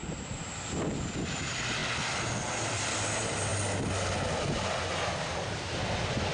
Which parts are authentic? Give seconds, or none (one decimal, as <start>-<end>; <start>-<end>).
0.0-1.8; 3.0-6.3